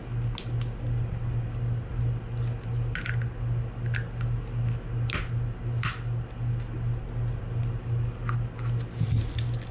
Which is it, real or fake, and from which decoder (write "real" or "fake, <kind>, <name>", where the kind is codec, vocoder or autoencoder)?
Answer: real